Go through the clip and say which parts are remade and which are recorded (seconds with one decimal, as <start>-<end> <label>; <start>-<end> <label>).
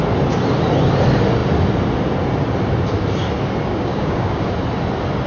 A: 0.0-3.7 recorded; 3.7-4.5 remade; 4.5-5.3 recorded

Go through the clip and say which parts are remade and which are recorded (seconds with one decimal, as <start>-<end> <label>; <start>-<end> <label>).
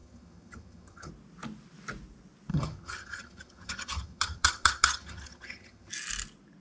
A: 0.0-1.1 remade; 1.1-2.5 recorded; 2.5-5.9 remade; 5.9-6.6 recorded